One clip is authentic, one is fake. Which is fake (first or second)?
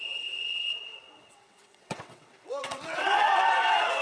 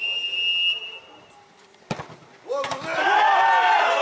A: first